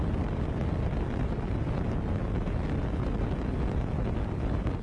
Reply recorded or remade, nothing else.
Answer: recorded